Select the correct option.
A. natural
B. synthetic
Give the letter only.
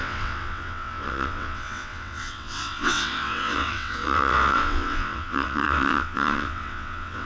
B